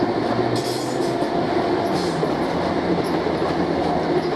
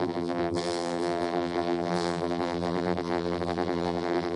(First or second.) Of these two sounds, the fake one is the second